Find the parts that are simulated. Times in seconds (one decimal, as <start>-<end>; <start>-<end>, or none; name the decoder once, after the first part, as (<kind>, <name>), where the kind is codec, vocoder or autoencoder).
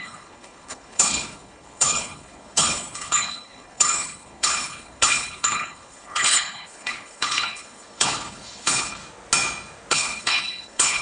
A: 0.0-9.0 (codec, HILCodec); 9.9-11.0